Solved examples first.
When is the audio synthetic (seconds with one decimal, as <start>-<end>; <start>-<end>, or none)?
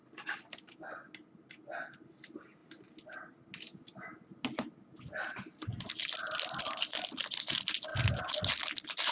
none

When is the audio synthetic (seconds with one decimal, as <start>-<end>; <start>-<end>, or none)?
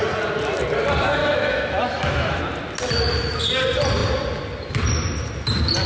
1.2-2.4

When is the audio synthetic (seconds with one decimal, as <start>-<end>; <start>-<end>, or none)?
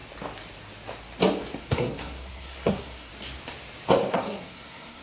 1.6-3.1; 4.1-5.0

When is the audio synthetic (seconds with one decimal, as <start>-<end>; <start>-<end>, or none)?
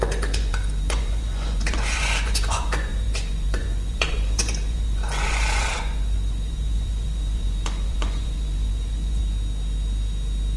0.0-9.2